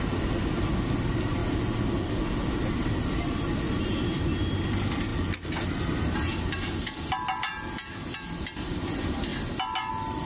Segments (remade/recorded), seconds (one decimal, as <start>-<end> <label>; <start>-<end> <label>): 0.0-10.3 recorded